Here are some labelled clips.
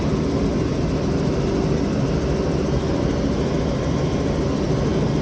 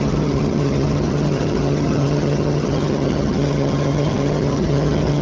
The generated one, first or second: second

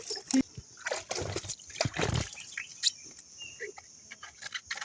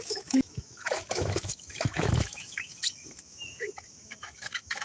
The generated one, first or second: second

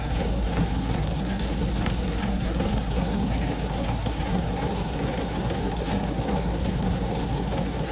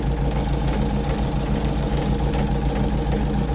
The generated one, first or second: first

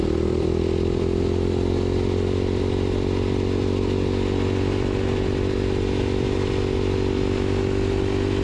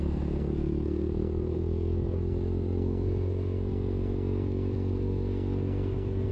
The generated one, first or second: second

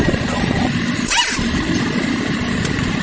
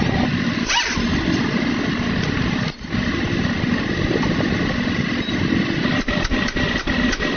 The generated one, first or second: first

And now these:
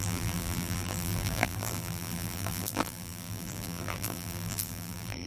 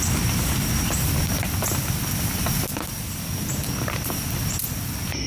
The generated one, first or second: first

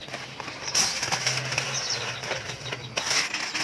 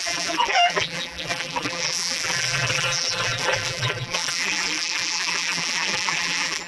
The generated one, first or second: second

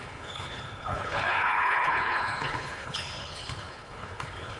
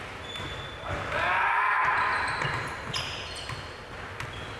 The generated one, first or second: first